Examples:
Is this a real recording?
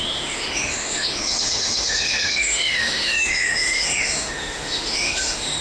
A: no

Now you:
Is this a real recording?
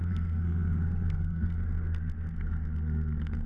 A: no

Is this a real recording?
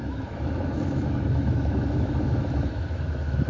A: no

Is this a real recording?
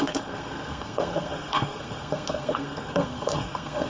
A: no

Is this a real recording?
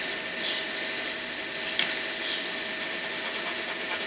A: yes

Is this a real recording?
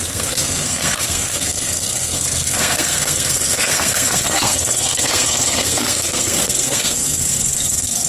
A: no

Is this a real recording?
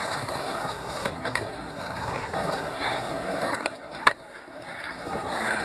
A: no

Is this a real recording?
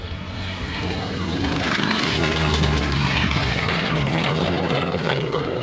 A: no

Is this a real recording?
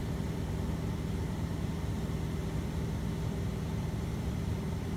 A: no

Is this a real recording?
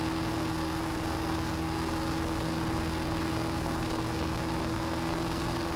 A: no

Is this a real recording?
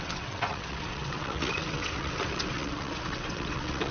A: no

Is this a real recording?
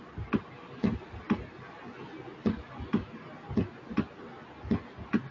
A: yes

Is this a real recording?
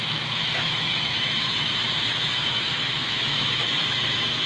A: no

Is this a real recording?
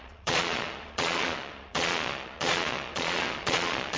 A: no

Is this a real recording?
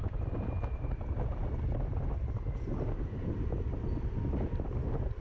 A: yes